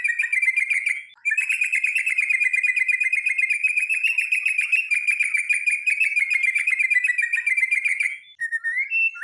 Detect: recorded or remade recorded